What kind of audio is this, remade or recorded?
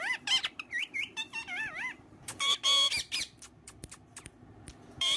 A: remade